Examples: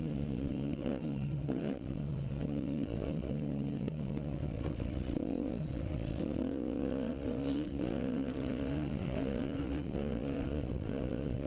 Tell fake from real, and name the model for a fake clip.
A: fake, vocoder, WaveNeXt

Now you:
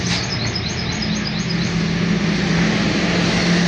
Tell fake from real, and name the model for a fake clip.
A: real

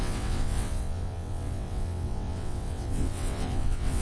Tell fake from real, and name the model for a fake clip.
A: fake, vocoder, WaveNeXt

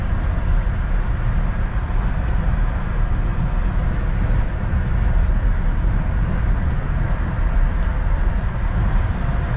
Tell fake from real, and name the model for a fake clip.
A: real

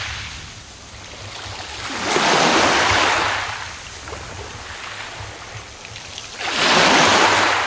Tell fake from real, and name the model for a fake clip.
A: real